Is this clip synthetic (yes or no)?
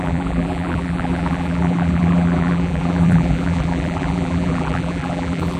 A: yes